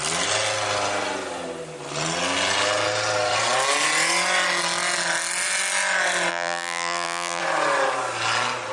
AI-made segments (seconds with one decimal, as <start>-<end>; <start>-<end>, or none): 6.3-7.4